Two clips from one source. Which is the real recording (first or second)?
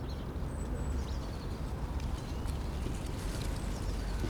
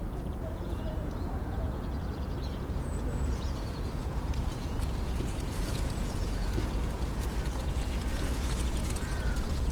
first